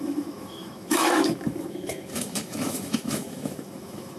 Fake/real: fake